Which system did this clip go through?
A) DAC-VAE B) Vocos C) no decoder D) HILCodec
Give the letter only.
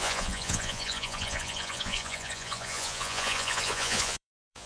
B